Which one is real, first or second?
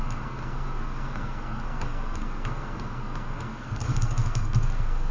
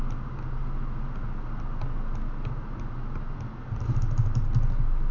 second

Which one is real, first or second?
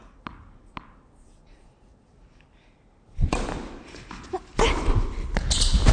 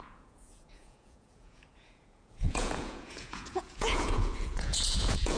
first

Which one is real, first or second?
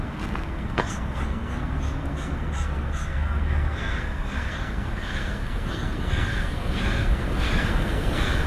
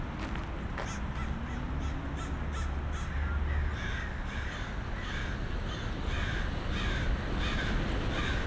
second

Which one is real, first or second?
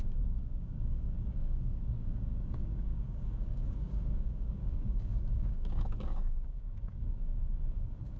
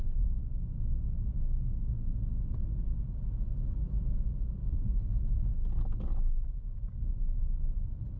second